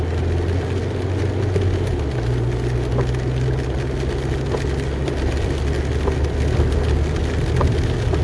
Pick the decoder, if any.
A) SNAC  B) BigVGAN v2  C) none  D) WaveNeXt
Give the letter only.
C